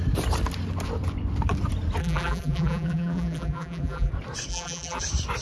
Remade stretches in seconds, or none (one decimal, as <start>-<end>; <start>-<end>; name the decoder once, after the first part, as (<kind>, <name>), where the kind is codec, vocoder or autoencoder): 2.0-4.1 (vocoder, BigVGAN v2); 4.5-5.0